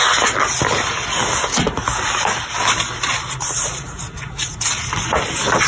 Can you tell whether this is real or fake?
real